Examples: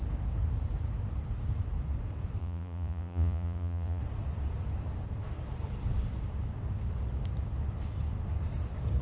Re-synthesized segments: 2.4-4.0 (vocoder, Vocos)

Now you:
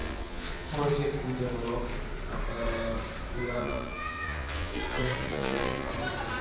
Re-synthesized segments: 0.0-0.7 (vocoder, Vocos); 3.6-5.9

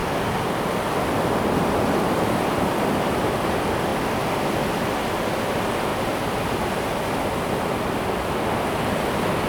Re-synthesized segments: none